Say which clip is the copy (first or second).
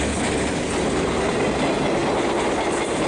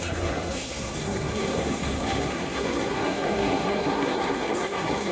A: second